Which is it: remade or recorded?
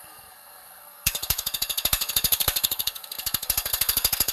remade